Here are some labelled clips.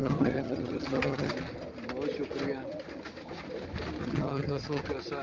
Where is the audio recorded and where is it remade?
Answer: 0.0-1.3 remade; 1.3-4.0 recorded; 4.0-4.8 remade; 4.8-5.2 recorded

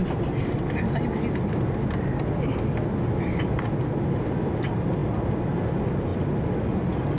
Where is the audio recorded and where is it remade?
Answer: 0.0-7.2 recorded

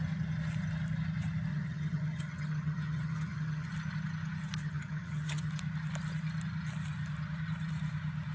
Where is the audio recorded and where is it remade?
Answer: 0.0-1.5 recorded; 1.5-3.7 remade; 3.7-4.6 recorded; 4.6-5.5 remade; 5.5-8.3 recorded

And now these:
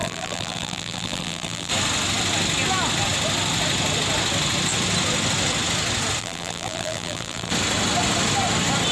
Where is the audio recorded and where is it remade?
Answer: 0.0-1.7 remade; 1.7-6.2 recorded; 6.2-7.5 remade; 7.5-8.9 recorded

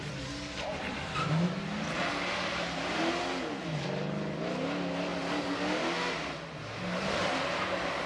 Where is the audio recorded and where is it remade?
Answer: 0.0-8.1 recorded

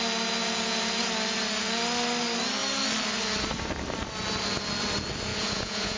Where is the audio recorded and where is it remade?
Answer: 0.0-0.4 recorded; 0.4-1.0 remade; 1.0-5.3 recorded; 5.3-6.0 remade

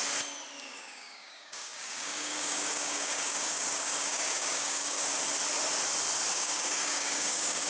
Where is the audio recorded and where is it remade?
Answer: 0.0-0.6 recorded; 0.6-5.0 remade; 5.0-6.3 recorded; 6.3-7.7 remade

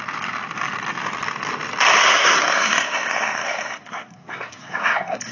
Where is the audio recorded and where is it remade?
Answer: 0.0-1.9 recorded; 1.9-5.3 remade